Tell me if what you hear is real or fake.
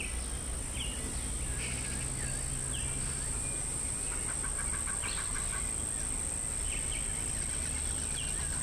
real